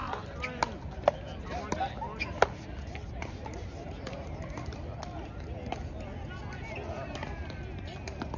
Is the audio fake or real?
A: real